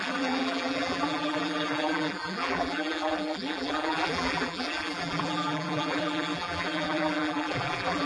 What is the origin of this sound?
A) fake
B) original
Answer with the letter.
A